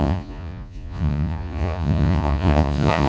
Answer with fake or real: fake